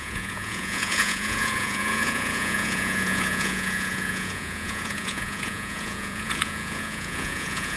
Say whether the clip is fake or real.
fake